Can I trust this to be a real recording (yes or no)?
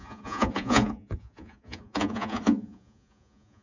no